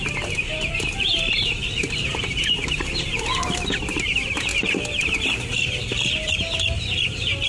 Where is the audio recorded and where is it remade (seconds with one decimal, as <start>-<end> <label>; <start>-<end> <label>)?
0.0-7.5 remade